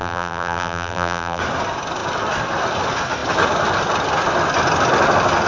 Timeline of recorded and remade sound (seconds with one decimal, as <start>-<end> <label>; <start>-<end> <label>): 0.0-1.4 remade; 1.4-5.5 recorded

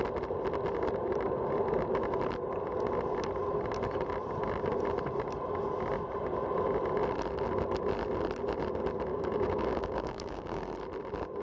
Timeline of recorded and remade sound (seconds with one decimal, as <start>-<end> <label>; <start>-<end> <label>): 0.0-9.1 recorded; 9.1-10.6 remade; 10.6-11.4 recorded

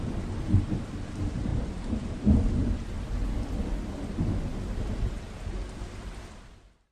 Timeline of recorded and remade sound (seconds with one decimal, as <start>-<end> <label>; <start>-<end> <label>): 0.0-1.5 recorded; 1.5-2.2 remade; 2.2-4.5 recorded; 4.5-5.2 remade; 5.2-6.9 recorded

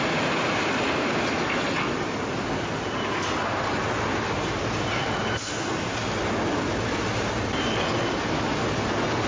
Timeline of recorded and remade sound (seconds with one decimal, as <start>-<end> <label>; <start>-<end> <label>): 0.0-3.8 recorded; 3.8-5.5 remade; 5.5-9.3 recorded